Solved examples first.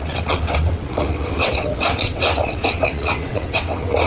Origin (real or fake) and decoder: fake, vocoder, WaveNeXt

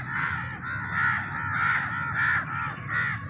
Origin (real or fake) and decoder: real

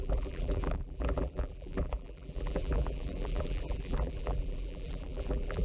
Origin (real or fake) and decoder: fake, vocoder, BigVGAN v2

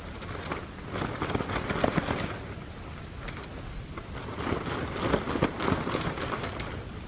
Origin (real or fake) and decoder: real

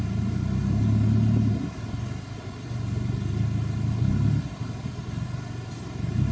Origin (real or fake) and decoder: real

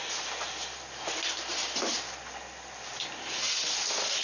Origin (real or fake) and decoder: real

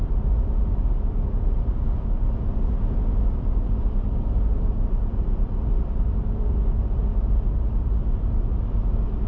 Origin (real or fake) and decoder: fake, vocoder, BigVGAN v2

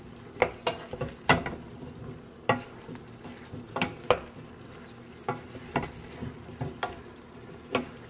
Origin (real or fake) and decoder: real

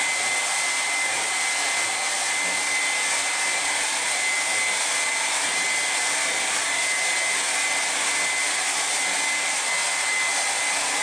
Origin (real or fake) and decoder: real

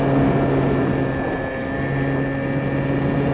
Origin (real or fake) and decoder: real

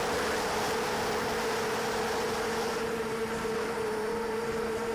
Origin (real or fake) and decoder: real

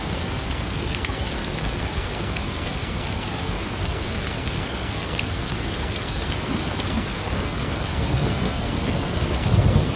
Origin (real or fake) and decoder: fake, codec, SNAC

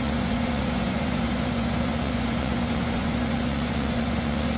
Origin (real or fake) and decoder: fake, vocoder, Vocos